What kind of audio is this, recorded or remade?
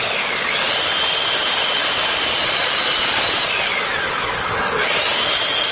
recorded